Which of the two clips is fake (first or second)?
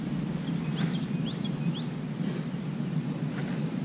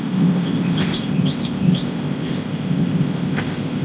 second